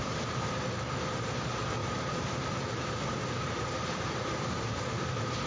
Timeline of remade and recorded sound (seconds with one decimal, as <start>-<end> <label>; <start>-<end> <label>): 0.0-1.8 recorded; 1.8-4.1 remade; 4.1-5.5 recorded

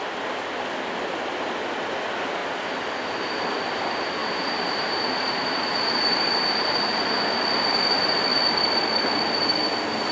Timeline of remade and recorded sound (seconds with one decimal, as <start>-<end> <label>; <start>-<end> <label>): 0.0-4.2 recorded; 4.2-7.2 remade; 7.2-10.1 recorded